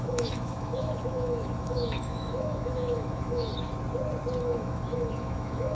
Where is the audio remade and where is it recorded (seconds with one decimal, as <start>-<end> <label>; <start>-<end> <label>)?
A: 0.0-3.5 remade; 3.5-4.4 recorded; 4.4-5.7 remade